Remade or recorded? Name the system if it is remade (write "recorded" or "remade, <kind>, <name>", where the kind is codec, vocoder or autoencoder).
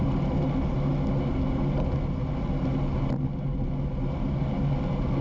recorded